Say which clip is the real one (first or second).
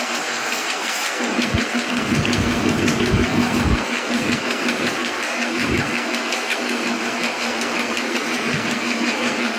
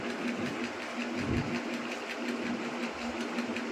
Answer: second